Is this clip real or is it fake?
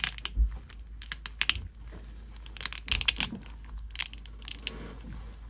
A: real